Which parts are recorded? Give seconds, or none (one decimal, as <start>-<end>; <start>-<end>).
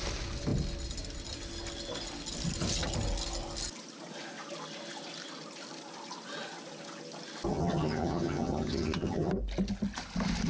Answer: 0.0-7.5; 9.3-10.5